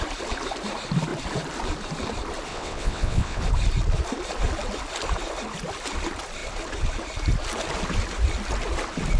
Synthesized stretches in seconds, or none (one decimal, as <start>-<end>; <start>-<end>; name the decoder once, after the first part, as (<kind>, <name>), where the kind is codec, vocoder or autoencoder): 2.5-3.4 (vocoder, WaveNeXt)